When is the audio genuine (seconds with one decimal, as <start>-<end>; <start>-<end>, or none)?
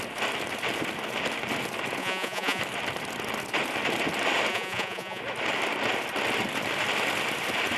0.0-2.0; 2.6-4.5; 5.2-7.8